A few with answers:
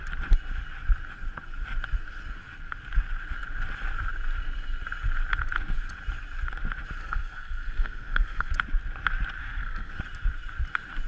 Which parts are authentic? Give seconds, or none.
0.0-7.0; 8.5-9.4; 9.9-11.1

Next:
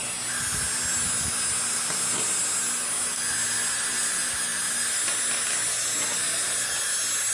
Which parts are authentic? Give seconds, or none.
0.0-7.3

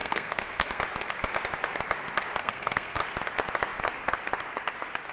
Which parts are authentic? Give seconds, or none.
0.8-2.4; 3.0-5.1

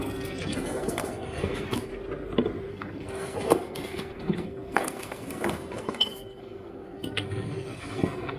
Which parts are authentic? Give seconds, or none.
1.9-2.7